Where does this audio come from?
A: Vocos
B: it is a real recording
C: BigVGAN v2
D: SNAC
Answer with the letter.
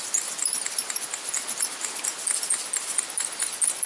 B